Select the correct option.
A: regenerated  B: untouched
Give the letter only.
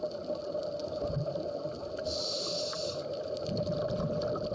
B